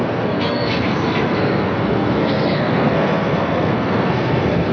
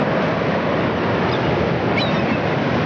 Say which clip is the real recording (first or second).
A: second